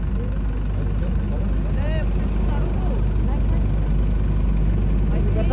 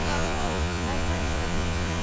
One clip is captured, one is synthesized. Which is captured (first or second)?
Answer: first